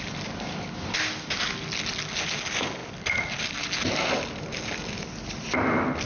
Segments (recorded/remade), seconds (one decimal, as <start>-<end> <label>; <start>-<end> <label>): 0.0-6.0 recorded

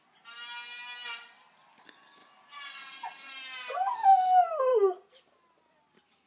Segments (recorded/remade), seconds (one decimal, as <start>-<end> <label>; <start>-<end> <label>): 0.0-2.2 recorded; 2.2-3.3 remade; 3.3-6.3 recorded

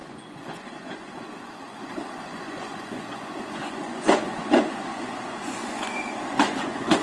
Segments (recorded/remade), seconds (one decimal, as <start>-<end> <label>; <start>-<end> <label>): 0.0-7.0 remade

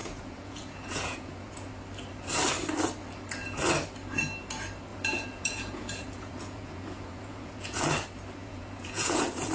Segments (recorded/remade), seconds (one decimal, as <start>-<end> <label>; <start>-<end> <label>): 0.0-1.7 remade; 1.7-4.9 recorded; 4.9-7.8 remade; 7.8-8.4 recorded; 8.4-9.5 remade